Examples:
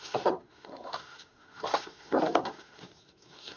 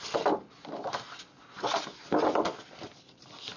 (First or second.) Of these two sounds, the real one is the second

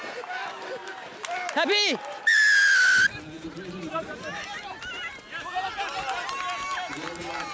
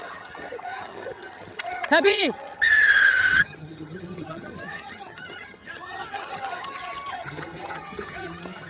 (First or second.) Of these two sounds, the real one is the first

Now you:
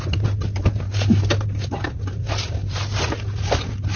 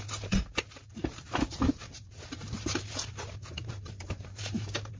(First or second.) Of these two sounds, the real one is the first